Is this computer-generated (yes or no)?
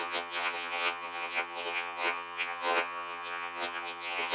yes